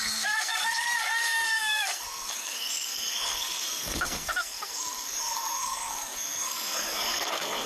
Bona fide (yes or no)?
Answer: no